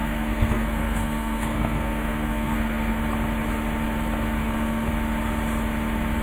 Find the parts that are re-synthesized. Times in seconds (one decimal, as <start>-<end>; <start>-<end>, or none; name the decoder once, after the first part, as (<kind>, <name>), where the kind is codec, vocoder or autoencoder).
0.0-3.0 (codec, SNAC); 4.4-4.9